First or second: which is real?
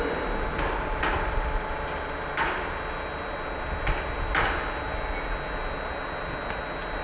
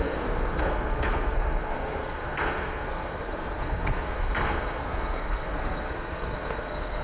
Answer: first